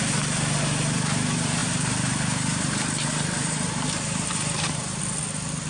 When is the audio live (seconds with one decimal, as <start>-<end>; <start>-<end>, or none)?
0.0-1.6; 5.0-5.7